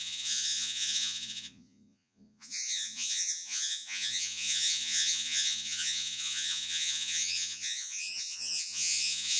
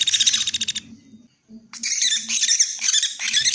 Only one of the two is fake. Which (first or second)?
first